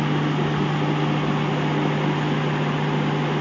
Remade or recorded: recorded